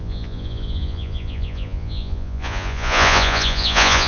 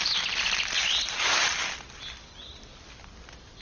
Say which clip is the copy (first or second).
first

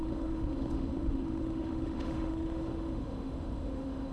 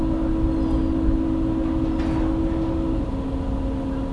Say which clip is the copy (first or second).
first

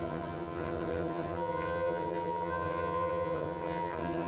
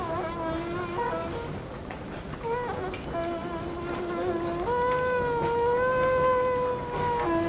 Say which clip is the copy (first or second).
first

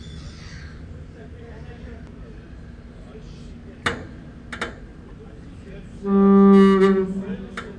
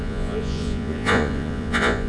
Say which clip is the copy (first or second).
second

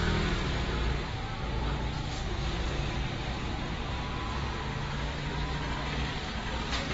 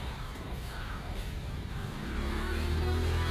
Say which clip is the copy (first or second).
second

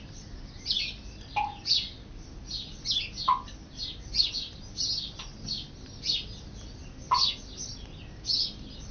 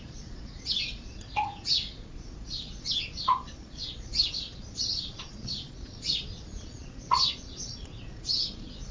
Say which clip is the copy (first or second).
second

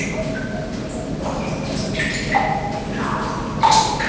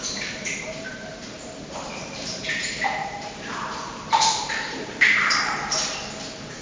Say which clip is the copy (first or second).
second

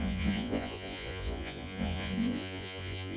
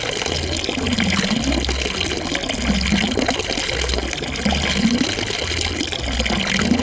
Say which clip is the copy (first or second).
first